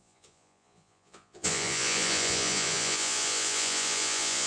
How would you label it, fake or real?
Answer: fake